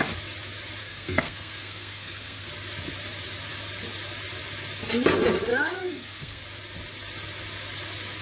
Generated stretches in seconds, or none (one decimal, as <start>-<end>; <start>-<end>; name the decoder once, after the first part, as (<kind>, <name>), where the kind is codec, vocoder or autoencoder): 0.8-2.5 (codec, SNAC); 5.5-6.4